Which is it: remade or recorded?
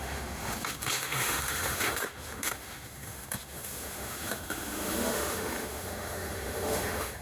remade